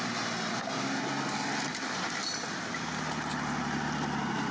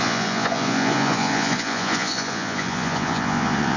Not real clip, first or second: second